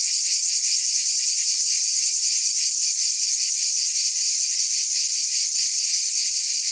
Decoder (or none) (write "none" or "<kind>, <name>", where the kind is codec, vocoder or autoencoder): none